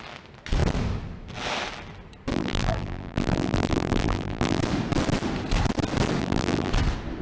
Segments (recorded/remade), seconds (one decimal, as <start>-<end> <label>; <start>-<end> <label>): 0.0-2.3 recorded; 2.3-4.6 remade; 4.6-6.2 recorded; 6.2-6.7 remade; 6.7-7.2 recorded